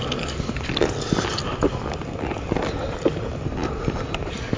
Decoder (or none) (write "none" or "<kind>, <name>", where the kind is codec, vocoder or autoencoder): none